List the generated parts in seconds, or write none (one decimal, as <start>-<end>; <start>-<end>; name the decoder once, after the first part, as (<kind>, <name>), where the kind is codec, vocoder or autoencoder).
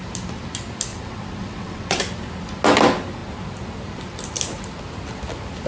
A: 0.9-2.0 (vocoder, WaveNeXt)